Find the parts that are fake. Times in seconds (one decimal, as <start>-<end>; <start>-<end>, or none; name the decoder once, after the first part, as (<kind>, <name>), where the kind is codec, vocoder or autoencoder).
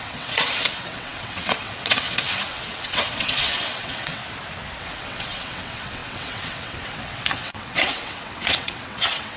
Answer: 0.0-4.2 (vocoder, WaveNeXt); 4.8-9.4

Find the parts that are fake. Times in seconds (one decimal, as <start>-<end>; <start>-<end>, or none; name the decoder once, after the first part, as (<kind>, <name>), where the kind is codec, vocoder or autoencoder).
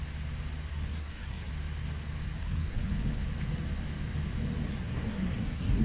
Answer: 0.7-1.5 (codec, SNAC); 2.4-2.9; 4.7-5.8